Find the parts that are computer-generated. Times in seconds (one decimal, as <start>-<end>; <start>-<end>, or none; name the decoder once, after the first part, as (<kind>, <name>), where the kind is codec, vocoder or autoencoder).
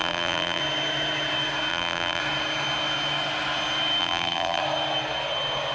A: 0.0-0.6 (vocoder, BigVGAN v2); 1.7-2.2; 4.0-4.6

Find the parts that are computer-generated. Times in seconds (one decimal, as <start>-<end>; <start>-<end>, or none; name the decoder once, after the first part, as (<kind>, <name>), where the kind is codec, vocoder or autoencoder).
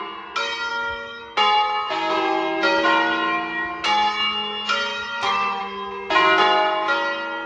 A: 0.7-1.2 (autoencoder, DAC-VAE); 4.9-5.6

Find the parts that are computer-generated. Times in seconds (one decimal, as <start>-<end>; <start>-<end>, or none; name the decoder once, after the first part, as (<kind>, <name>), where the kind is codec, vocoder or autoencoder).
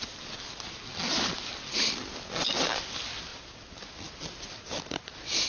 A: none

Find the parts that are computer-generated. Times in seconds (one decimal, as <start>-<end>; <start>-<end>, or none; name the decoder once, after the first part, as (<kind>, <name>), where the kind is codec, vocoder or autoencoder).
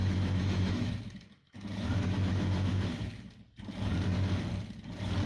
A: 0.0-3.2 (autoencoder, DAC-VAE)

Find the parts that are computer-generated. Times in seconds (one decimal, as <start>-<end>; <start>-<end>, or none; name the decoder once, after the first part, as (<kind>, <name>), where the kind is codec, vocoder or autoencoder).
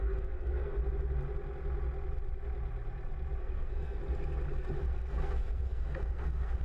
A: 0.0-0.8 (codec, SNAC); 3.4-4.0; 4.8-6.6